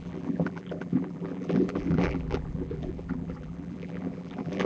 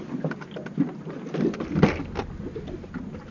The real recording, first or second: second